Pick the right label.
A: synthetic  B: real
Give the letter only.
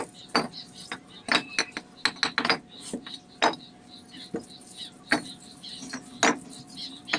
B